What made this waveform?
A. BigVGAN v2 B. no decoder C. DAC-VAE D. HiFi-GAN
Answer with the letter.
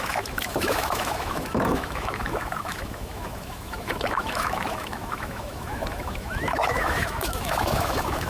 C